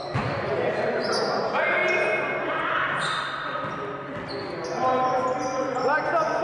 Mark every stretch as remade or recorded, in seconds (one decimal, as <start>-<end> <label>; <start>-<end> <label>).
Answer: 0.0-6.4 recorded